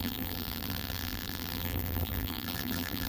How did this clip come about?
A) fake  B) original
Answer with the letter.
A